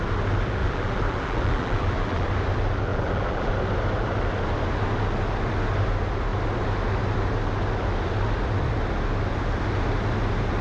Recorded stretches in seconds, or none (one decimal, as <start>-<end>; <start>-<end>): 0.0-0.6; 2.3-2.9; 3.5-10.6